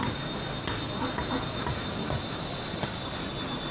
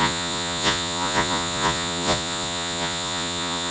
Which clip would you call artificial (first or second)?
second